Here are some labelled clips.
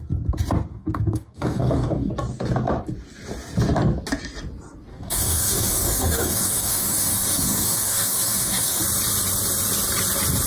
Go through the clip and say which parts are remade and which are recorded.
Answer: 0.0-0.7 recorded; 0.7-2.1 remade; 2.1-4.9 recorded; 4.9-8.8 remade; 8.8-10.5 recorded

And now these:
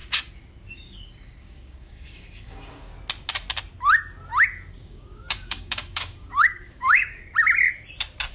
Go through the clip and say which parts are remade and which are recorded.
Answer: 0.0-0.7 recorded; 0.7-2.9 remade; 2.9-4.7 recorded; 4.7-7.2 remade; 7.2-8.3 recorded

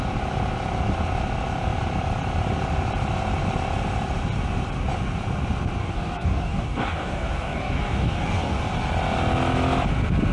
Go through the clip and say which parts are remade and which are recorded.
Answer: 0.0-5.8 recorded; 5.8-8.6 remade; 8.6-10.3 recorded